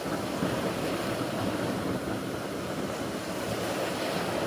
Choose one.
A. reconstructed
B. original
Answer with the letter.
B